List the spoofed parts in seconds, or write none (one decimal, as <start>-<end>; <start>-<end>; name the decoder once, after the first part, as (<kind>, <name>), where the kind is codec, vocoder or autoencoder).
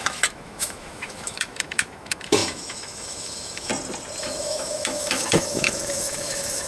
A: 0.0-3.7 (autoencoder, DAC-VAE); 4.2-6.7